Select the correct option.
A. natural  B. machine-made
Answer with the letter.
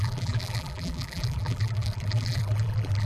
B